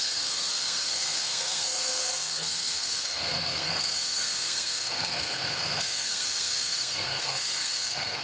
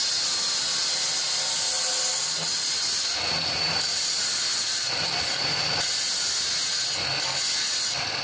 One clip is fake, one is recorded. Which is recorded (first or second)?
second